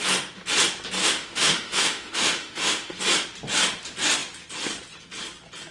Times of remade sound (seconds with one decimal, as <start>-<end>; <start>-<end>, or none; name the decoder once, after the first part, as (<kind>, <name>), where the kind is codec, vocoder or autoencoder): 1.0-3.0 (autoencoder, DAC-VAE)